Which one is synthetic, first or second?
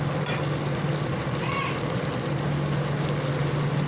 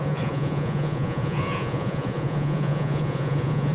second